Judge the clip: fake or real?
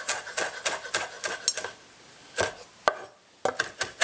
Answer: real